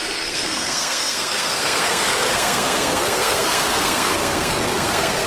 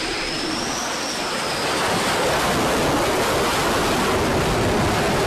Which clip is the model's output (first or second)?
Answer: first